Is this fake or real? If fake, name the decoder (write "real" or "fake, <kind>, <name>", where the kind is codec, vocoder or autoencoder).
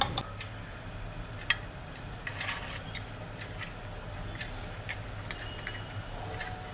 real